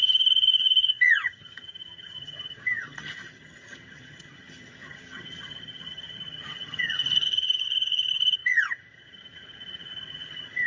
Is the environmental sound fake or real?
fake